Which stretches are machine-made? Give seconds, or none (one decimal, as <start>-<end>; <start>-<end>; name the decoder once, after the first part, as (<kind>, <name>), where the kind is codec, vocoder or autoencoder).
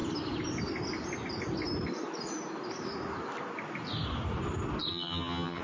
4.9-5.6 (vocoder, HiFi-GAN)